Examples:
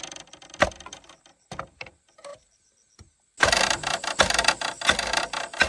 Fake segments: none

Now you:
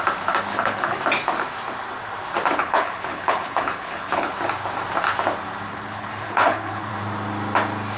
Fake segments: 0.5-1.0 (codec, HILCodec); 2.6-4.3; 5.7-6.9

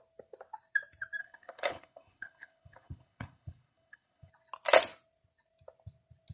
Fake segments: 1.2-4.3 (codec, HILCodec)

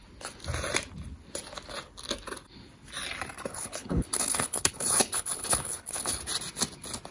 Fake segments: 3.5-6.2 (codec, HILCodec)

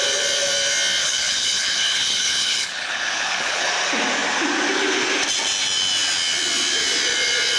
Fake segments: 1.0-3.7 (codec, HILCodec)

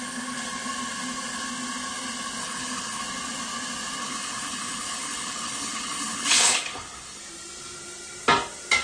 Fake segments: 2.4-3.0 (codec, HILCodec); 4.0-7.2